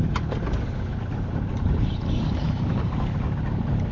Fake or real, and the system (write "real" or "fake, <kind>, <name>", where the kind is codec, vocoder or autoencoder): real